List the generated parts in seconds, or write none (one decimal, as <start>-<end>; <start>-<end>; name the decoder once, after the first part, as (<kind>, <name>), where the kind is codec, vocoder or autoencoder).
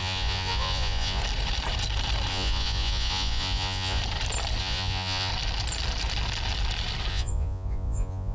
0.0-1.2 (vocoder, Vocos); 2.3-4.0; 4.6-5.3; 7.1-8.3